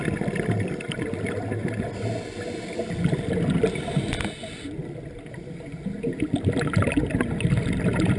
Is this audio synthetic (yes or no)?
no